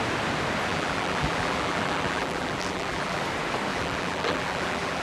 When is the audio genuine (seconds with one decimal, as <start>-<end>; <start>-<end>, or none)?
0.0-0.7; 3.2-3.7